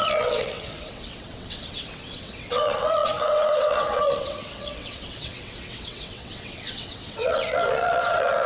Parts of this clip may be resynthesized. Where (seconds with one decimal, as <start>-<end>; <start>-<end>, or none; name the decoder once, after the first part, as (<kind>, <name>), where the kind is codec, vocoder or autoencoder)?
0.0-8.5 (vocoder, WaveNeXt)